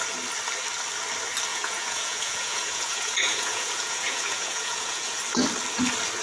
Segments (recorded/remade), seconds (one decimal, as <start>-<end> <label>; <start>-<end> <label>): 0.0-1.5 recorded; 1.5-5.2 remade; 5.2-6.2 recorded